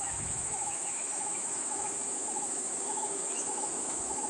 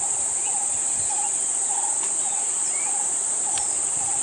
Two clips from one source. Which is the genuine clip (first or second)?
second